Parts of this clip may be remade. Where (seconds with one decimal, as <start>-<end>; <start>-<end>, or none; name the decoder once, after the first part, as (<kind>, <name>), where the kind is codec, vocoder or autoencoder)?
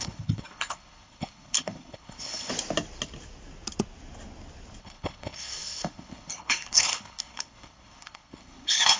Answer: 0.0-2.5 (codec, HILCodec); 4.8-9.0